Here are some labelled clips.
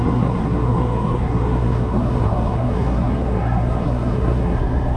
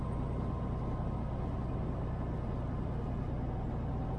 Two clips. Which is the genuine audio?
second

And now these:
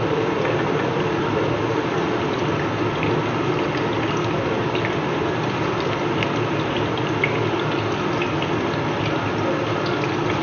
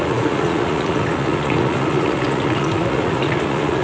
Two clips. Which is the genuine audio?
first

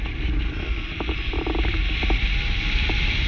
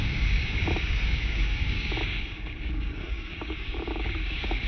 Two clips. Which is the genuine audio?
first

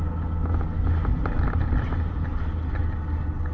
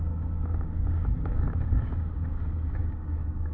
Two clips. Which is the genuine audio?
first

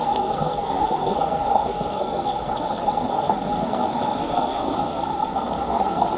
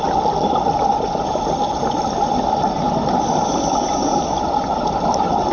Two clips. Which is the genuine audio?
second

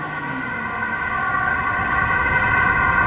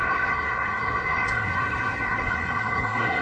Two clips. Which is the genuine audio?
first